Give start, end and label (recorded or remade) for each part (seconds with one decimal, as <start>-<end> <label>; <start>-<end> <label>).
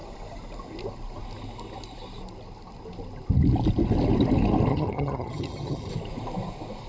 0.0-4.7 recorded; 4.7-5.9 remade; 5.9-6.9 recorded